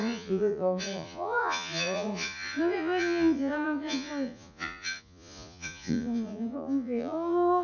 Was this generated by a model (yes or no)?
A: yes